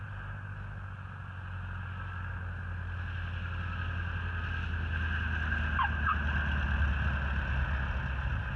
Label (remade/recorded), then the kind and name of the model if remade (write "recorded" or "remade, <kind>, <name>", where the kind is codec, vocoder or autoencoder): recorded